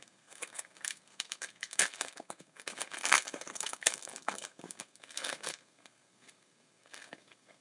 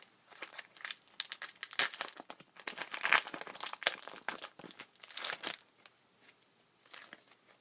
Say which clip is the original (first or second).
second